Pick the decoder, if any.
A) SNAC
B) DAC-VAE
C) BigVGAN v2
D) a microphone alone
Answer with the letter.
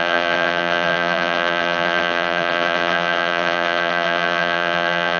C